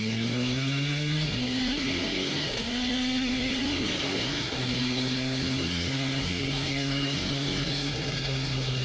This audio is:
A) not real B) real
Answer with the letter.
A